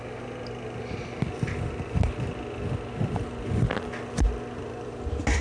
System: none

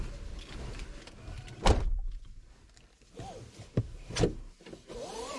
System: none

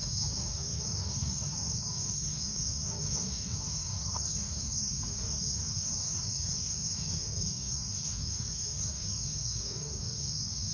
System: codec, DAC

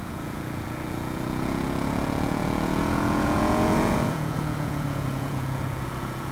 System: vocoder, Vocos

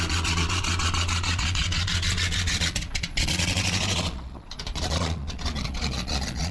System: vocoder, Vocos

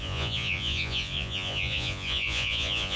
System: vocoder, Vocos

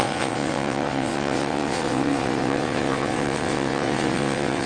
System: vocoder, WaveNeXt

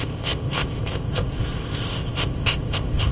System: codec, ZipCodec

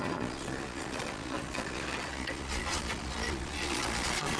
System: vocoder, Vocos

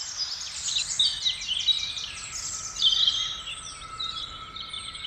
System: none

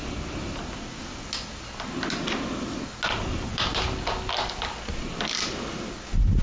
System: none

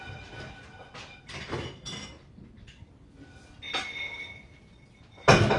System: none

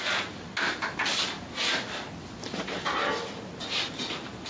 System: none